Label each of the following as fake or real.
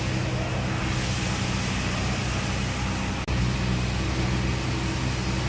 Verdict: real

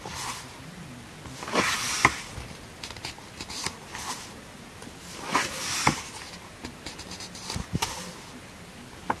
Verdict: real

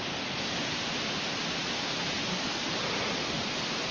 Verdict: real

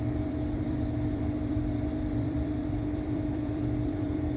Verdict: fake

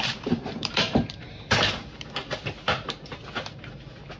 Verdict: fake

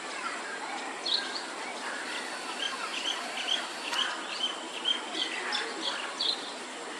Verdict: fake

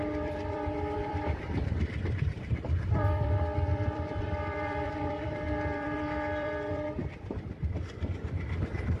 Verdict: fake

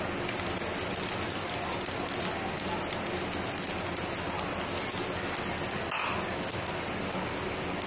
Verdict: real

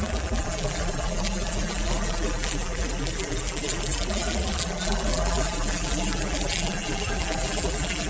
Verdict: fake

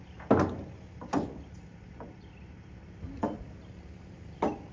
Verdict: real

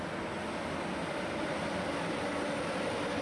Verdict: real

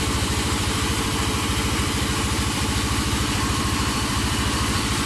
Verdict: fake